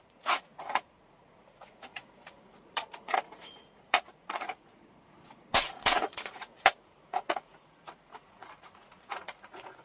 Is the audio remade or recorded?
remade